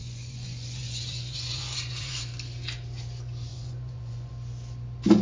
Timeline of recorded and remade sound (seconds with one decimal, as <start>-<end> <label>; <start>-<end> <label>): 0.0-2.2 remade; 2.2-3.5 recorded; 3.5-4.3 remade; 4.3-5.2 recorded